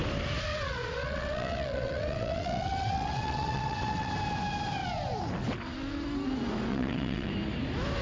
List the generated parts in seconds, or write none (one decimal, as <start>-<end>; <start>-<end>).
0.5-4.1; 6.7-7.3